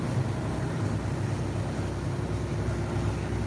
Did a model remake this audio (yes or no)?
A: no